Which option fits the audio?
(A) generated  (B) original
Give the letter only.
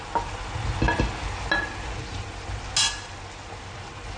B